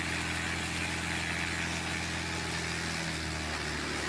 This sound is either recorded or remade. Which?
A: recorded